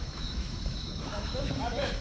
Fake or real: fake